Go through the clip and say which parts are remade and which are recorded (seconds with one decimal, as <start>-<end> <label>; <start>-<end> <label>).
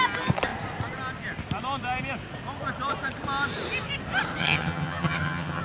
0.0-4.4 recorded; 4.4-5.6 remade